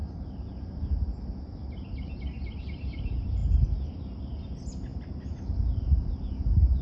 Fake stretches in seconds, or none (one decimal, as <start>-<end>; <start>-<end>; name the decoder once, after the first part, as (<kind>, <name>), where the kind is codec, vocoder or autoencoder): none